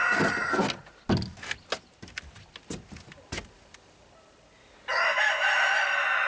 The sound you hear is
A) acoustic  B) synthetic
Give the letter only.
A